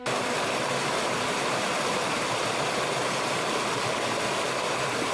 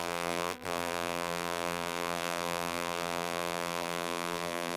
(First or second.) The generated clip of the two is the second